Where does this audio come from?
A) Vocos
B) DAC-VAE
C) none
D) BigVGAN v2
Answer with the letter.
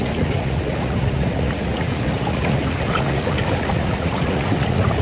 A